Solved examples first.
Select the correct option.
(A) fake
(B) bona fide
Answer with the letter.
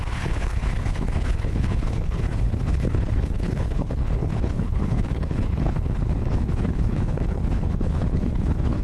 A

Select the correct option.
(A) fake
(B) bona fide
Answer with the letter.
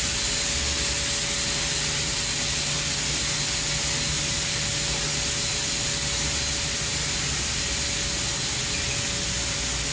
B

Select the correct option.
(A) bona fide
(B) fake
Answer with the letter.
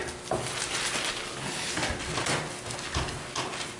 A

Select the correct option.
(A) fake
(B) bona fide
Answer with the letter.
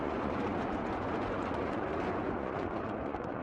A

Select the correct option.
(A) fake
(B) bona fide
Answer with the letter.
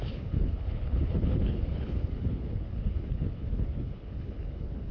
A